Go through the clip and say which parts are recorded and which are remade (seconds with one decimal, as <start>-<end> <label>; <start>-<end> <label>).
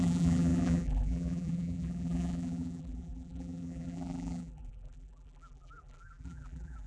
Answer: 0.0-6.9 remade